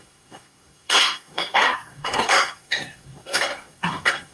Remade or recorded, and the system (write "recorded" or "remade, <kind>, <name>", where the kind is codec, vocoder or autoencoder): remade, codec, SNAC